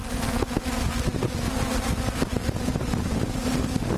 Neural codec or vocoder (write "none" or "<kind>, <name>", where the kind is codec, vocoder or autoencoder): none